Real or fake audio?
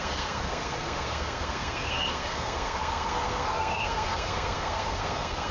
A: fake